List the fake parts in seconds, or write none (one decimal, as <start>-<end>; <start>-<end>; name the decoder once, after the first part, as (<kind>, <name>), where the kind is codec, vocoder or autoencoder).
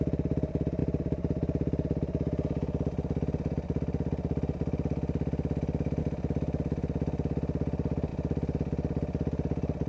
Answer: none